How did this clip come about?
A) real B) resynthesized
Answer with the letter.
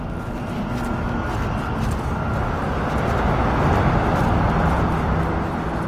A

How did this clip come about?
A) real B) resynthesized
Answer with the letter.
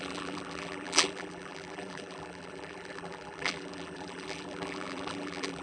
B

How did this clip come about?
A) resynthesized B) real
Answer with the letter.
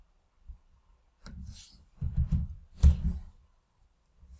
A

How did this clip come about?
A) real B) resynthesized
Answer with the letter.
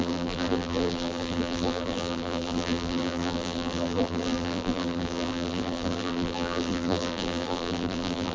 B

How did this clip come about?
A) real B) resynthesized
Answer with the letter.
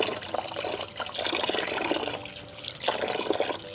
A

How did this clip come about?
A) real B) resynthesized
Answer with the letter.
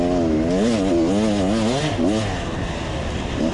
A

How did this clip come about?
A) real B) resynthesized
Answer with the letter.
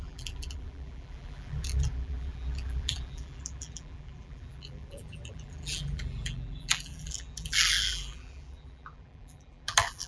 B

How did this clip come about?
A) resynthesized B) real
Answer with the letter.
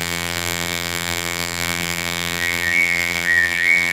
A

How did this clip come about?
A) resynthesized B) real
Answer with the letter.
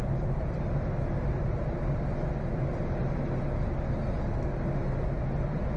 B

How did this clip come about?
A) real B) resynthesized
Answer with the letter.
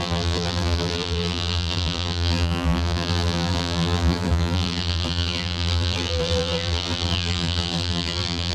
B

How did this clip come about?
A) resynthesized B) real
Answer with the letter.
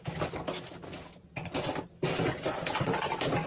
B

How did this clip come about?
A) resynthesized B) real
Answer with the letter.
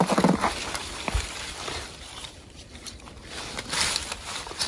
A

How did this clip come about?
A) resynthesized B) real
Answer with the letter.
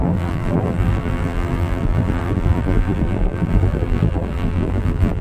A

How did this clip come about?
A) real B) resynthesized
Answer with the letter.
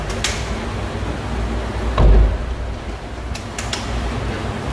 A